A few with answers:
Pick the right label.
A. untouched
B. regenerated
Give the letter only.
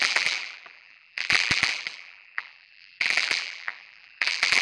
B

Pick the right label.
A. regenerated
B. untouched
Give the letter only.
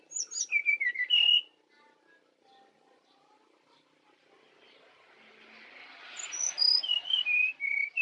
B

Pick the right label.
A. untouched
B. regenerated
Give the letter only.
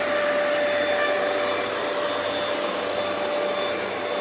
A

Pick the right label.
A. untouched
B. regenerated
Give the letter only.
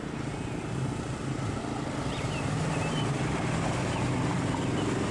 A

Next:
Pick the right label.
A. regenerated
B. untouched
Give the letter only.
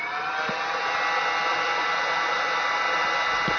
B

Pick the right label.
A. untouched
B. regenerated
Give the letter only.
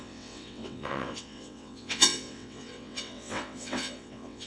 B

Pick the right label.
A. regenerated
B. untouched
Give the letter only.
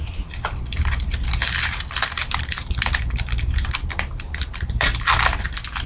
A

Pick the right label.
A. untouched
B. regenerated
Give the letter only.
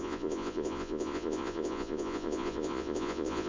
B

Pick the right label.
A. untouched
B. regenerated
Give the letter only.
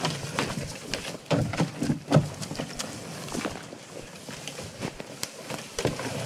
B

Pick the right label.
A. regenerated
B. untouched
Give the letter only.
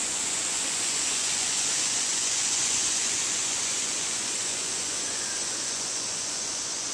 A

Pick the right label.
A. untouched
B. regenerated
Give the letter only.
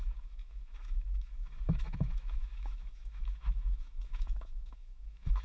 B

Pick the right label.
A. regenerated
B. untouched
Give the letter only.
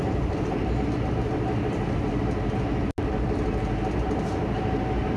B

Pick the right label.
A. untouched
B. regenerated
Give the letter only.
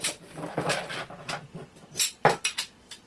A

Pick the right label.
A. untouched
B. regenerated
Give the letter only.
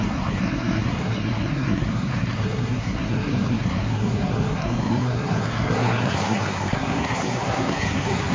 B